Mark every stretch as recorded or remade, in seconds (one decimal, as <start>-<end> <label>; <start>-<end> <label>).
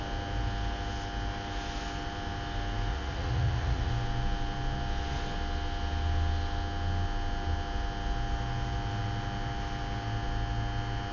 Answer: 0.0-2.9 recorded; 2.9-3.9 remade; 3.9-11.1 recorded